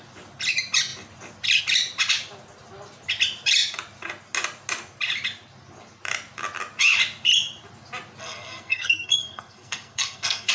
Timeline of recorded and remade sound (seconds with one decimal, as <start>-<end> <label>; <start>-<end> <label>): 0.0-8.2 recorded; 8.2-10.5 remade